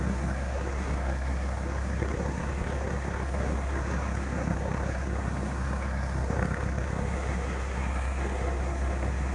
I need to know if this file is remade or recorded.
remade